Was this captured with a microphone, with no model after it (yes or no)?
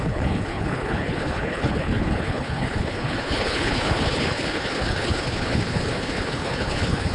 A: no